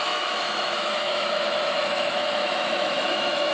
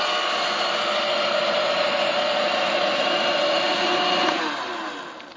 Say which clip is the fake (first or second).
first